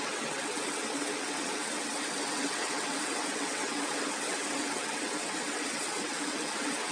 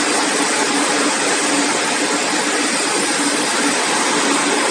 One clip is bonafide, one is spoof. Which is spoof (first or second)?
first